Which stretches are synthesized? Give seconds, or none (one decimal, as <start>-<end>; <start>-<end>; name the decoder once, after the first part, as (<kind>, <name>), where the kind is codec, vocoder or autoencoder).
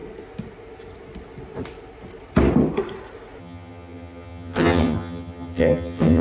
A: 3.4-6.2 (vocoder, HiFi-GAN)